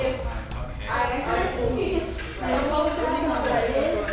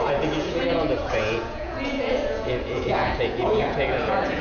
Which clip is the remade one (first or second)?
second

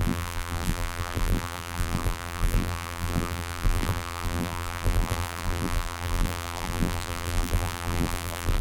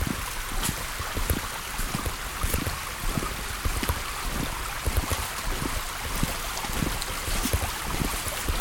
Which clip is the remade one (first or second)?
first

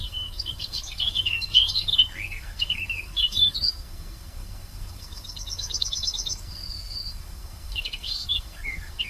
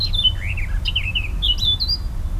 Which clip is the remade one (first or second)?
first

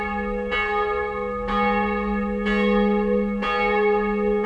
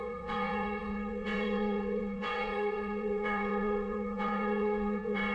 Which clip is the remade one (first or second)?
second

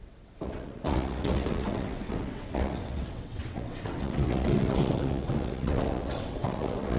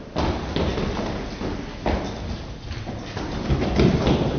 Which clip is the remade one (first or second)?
first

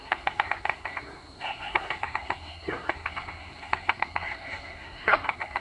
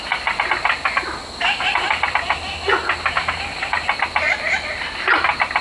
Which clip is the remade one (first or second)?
first